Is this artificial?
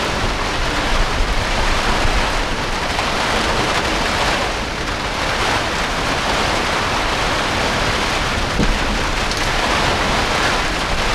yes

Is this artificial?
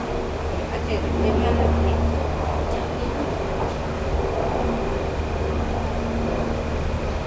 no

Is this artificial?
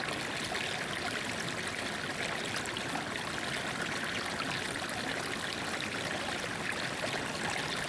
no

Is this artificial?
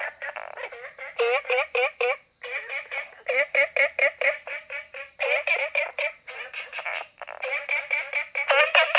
yes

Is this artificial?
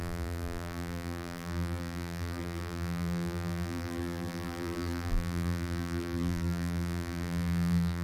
yes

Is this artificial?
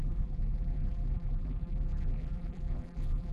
yes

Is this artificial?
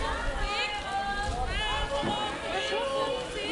no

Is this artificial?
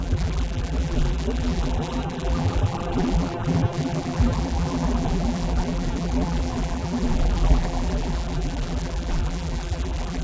yes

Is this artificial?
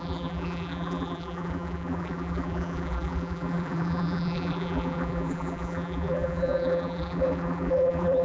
yes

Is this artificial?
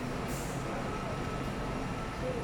no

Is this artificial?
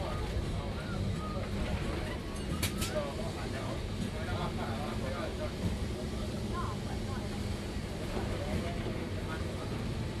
no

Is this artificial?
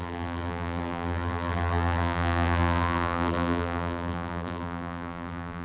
yes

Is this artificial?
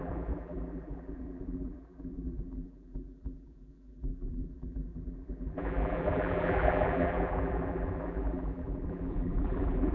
yes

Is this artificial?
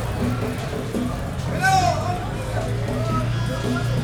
no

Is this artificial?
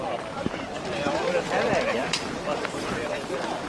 yes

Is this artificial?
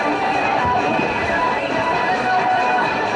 yes